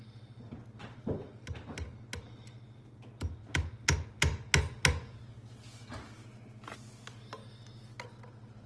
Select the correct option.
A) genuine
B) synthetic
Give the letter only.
A